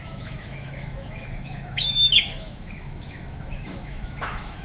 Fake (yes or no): yes